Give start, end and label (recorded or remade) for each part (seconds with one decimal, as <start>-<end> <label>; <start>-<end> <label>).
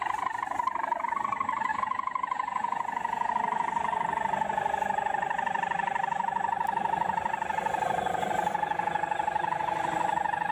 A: 0.0-1.7 recorded; 1.7-3.3 remade; 3.3-10.5 recorded